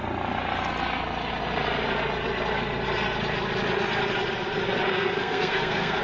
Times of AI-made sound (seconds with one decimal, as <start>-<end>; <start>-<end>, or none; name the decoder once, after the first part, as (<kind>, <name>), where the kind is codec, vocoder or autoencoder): 4.9-6.0 (codec, SNAC)

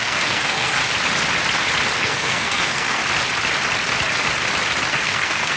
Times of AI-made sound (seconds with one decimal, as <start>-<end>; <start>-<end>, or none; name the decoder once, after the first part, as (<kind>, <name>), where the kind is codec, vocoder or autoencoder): 0.0-0.8 (codec, SNAC); 2.0-3.0; 4.9-5.6

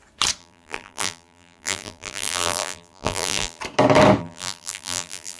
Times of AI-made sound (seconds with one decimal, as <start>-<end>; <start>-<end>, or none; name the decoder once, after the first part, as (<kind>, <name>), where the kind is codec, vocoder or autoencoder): 0.4-3.6 (vocoder, BigVGAN v2); 4.2-5.4

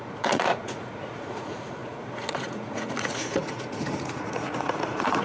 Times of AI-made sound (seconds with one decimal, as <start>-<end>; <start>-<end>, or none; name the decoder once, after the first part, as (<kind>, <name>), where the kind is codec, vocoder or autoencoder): 0.0-5.2 (vocoder, Vocos)